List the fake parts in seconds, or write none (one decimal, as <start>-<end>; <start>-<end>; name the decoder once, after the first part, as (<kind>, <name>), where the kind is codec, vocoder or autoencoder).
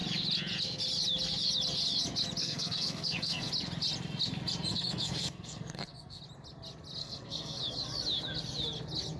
2.4-3.5 (codec, SNAC); 4.7-6.2; 7.0-7.6